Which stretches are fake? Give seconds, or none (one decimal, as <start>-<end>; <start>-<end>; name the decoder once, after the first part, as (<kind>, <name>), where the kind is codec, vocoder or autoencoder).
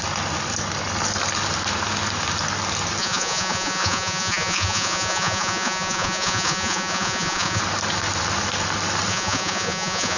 3.0-7.6 (vocoder, Vocos); 9.1-10.2